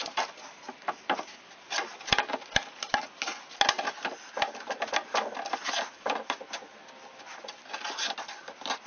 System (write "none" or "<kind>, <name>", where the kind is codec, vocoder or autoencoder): none